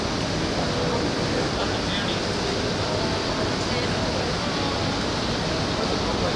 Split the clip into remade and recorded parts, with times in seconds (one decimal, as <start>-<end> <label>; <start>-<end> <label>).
0.0-6.4 recorded